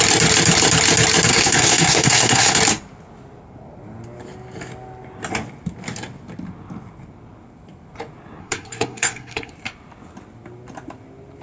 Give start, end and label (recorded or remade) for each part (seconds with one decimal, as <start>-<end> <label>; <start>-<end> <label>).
0.0-1.3 recorded; 1.3-2.6 remade; 2.6-8.4 recorded; 8.4-9.5 remade; 9.5-11.4 recorded